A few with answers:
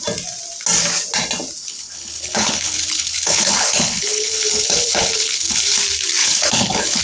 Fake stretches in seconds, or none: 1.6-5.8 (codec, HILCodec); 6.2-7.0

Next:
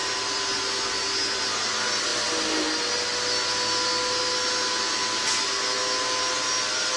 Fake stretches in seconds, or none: 0.0-0.6 (vocoder, BigVGAN v2)

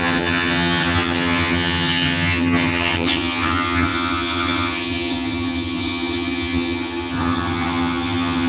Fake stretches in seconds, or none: 0.0-8.5 (vocoder, HiFi-GAN)

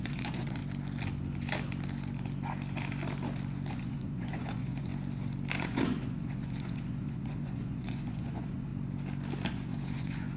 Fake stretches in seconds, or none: 0.0-0.6 (vocoder, Vocos); 3.7-4.9; 5.6-8.7; 9.5-10.4

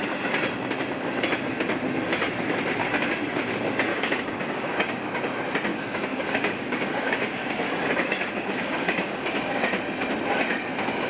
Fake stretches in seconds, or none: 3.9-4.9 (codec, DAC); 5.7-9.6